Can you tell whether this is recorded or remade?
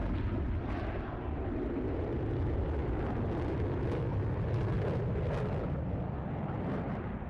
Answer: recorded